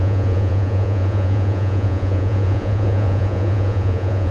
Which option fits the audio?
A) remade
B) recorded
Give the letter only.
A